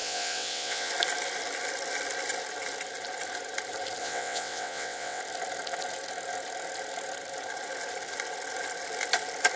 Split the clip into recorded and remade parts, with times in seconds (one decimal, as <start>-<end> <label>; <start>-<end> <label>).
0.0-0.9 remade; 0.9-4.0 recorded; 4.0-5.2 remade; 5.2-9.6 recorded